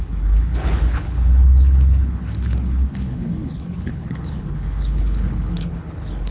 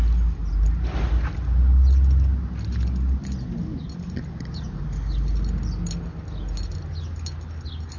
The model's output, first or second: first